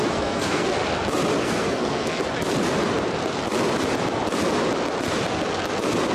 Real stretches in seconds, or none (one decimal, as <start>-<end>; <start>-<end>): 0.8-1.4; 2.2-6.1